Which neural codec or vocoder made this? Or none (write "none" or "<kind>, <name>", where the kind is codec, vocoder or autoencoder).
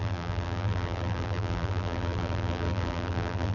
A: vocoder, BigVGAN v2